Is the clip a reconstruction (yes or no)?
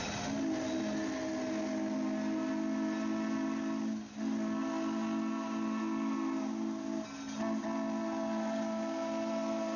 no